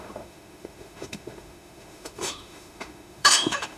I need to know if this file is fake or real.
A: fake